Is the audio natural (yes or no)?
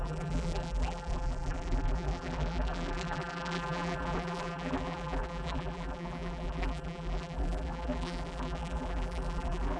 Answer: no